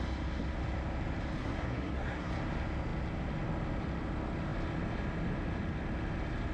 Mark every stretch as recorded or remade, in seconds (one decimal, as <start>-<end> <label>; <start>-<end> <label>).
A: 0.0-1.4 recorded; 1.4-2.3 remade; 2.3-6.5 recorded